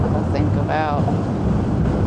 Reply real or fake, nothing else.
real